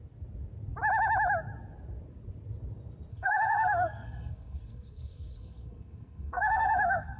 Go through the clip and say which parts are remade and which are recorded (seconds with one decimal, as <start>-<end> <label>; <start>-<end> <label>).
0.0-3.1 recorded; 3.1-7.2 remade